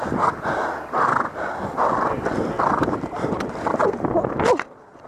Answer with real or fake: fake